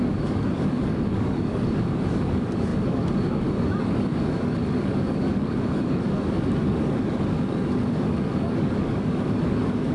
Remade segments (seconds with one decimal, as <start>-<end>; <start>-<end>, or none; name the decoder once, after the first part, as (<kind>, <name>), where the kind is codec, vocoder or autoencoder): 0.0-9.9 (codec, DAC)